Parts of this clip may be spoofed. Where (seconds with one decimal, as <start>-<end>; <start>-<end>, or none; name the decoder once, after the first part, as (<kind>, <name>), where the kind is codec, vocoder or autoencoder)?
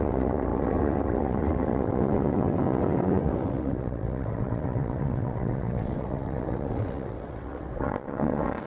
0.0-8.7 (vocoder, WaveNeXt)